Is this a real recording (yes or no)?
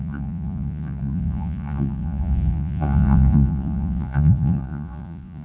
no